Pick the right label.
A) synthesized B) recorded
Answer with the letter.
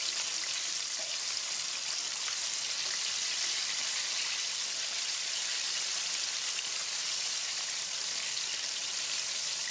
A